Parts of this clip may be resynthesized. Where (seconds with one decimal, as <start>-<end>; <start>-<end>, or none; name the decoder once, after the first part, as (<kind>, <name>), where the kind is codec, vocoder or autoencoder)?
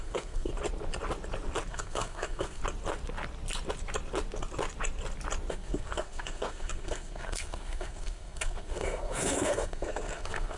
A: 0.0-0.5 (codec, SNAC); 1.7-2.6; 5.5-10.6